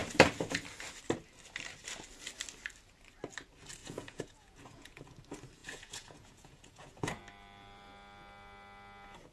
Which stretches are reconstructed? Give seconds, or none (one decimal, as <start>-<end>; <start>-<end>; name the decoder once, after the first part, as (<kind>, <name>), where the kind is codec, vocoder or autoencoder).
3.8-5.0 (vocoder, Vocos); 5.6-7.2

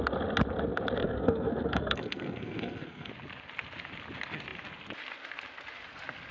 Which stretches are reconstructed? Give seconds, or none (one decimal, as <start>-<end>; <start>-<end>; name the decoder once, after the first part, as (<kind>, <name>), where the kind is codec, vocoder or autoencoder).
1.0-3.1 (codec, SNAC)